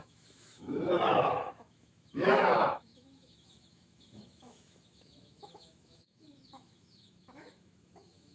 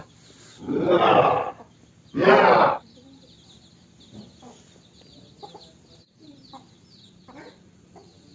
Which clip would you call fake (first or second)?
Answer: first